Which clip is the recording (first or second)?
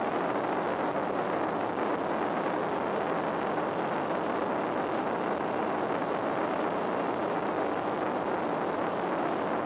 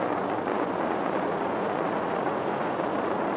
first